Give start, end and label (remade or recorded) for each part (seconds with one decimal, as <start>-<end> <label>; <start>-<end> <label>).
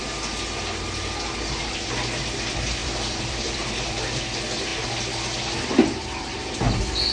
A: 0.0-2.8 recorded; 2.8-4.1 remade; 4.1-7.1 recorded